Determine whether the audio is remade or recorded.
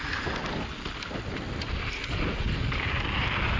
recorded